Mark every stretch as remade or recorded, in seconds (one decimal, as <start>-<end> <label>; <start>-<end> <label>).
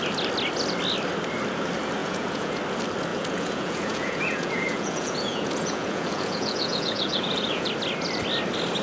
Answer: 0.0-2.0 recorded; 2.0-2.6 remade; 2.6-3.1 recorded; 3.1-7.7 remade; 7.7-8.8 recorded